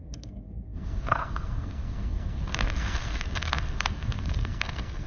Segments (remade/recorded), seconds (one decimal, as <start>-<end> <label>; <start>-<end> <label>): 0.0-5.1 remade